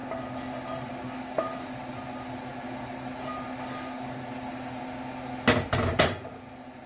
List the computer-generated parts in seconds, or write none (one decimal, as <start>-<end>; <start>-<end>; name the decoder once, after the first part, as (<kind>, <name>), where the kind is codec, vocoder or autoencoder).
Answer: none